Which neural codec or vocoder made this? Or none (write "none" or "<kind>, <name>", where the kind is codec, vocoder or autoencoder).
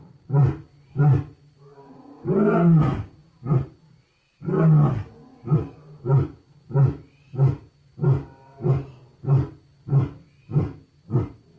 none